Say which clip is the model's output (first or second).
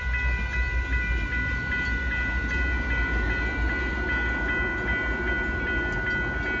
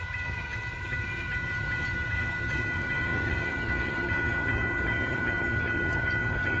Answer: second